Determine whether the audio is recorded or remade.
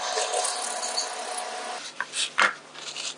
recorded